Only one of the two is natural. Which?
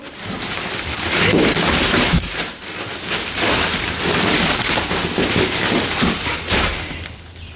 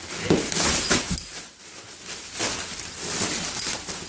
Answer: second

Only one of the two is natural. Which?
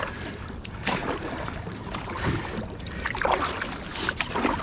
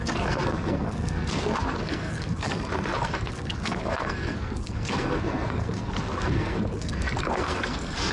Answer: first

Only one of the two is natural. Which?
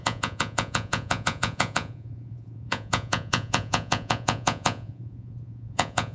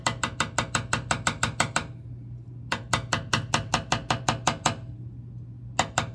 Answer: second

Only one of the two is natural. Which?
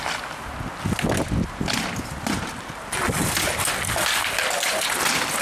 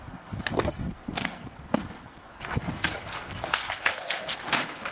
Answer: first